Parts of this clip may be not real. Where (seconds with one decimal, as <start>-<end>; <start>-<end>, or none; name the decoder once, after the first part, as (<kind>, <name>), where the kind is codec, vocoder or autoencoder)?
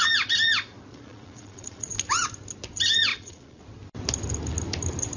0.9-1.9 (vocoder, Vocos); 3.1-3.6